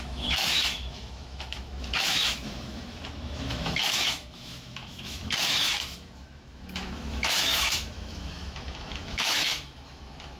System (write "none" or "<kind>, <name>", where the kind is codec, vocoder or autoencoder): autoencoder, DAC-VAE